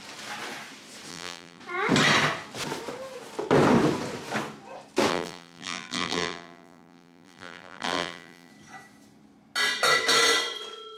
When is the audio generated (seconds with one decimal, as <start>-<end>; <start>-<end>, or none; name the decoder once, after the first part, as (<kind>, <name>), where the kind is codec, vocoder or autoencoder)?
1.1-1.6 (vocoder, BigVGAN v2); 5.1-8.5